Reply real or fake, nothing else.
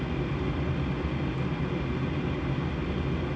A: real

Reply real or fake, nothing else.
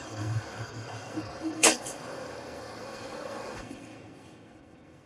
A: fake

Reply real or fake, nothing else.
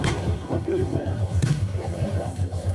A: fake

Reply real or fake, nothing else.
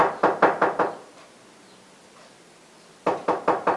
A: fake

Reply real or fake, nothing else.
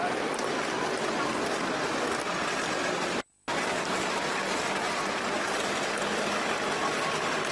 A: real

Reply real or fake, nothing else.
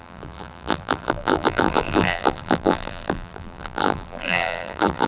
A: fake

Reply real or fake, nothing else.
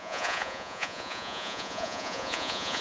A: fake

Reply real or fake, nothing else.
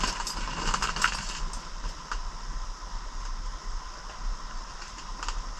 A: real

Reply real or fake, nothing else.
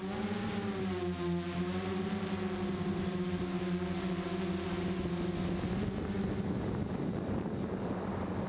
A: real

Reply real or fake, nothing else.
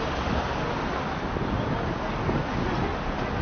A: real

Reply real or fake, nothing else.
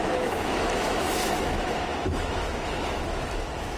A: fake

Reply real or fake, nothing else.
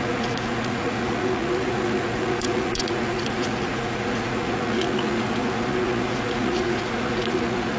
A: fake